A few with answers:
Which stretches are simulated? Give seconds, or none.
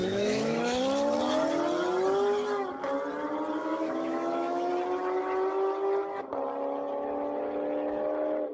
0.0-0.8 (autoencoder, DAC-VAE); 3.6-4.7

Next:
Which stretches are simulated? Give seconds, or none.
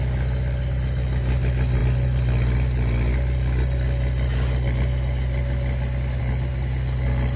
none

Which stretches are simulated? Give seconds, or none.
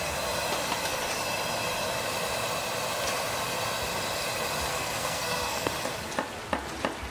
4.7-5.7 (codec, SNAC)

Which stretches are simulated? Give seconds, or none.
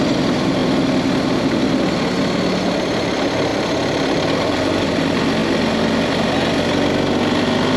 3.5-5.0 (vocoder, BigVGAN v2)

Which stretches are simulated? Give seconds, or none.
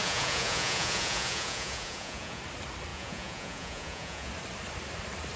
0.0-2.4 (vocoder, Vocos); 2.9-4.3